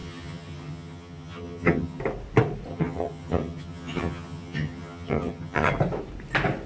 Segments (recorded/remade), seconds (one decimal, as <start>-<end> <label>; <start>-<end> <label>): 0.0-2.0 remade; 2.0-2.7 recorded; 2.7-5.7 remade; 5.7-6.7 recorded